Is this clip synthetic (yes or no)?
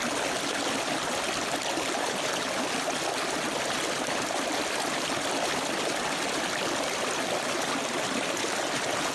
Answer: no